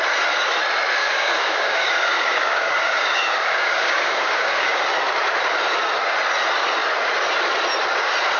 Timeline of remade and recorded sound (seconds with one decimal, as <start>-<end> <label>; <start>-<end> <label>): 0.0-1.0 recorded; 1.0-4.8 remade; 4.8-8.4 recorded